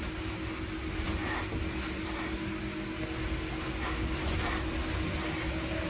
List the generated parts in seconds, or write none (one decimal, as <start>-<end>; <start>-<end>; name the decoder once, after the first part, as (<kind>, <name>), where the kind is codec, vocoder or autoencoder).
none